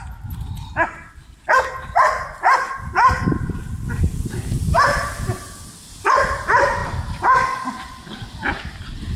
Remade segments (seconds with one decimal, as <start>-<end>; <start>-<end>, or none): none